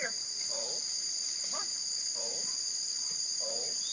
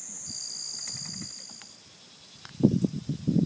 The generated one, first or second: first